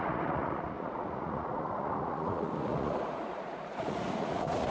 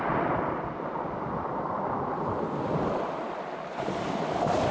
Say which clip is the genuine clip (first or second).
second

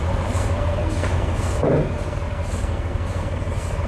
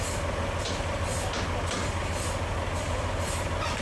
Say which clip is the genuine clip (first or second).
second